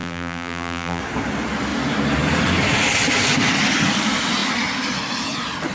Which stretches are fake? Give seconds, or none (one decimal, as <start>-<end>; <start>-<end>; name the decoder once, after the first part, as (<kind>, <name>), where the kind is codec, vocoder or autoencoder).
0.0-1.0 (vocoder, BigVGAN v2)